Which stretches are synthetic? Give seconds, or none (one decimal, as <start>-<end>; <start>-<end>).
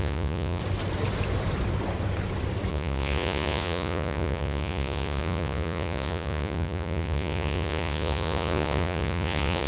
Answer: 0.0-0.6; 2.7-9.7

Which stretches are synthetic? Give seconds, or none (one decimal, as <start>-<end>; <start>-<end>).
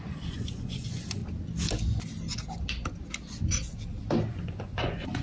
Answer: 0.0-1.2; 4.3-5.2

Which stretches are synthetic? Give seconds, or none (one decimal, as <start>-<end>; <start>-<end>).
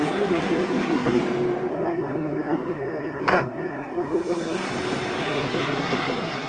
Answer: 0.0-1.2; 1.7-4.7; 5.2-6.5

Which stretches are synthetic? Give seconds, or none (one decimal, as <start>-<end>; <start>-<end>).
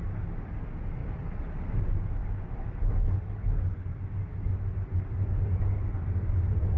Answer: none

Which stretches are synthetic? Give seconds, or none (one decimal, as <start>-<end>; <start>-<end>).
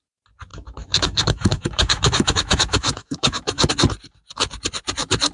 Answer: 0.5-3.7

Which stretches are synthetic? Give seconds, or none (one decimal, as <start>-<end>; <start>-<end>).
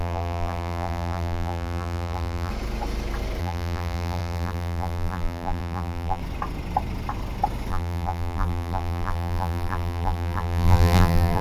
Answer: 0.0-2.5; 3.4-6.2; 7.7-11.4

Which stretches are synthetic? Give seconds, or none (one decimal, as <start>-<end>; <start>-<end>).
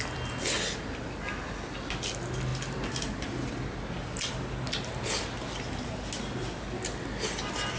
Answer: none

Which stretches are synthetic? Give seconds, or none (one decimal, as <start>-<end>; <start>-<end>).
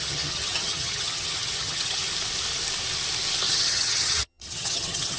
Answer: 0.0-2.0; 3.5-5.2